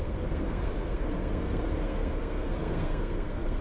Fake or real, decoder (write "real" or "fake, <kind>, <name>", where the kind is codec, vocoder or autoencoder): fake, codec, SNAC